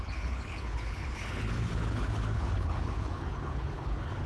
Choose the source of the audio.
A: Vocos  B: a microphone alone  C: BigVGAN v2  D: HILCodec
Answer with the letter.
D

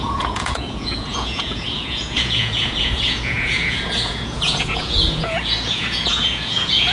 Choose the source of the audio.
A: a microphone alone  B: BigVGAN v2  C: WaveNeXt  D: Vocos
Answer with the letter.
D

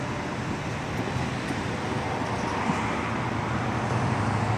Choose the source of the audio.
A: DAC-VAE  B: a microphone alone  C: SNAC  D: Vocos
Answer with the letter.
B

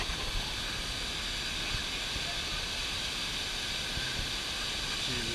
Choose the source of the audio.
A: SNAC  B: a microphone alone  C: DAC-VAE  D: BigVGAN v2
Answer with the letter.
B